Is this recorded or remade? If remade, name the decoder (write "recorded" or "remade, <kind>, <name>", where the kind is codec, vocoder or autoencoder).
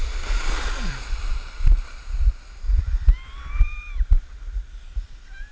remade, vocoder, BigVGAN v2